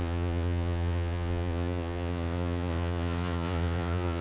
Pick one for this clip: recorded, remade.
remade